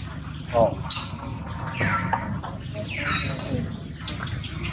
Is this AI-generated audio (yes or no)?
no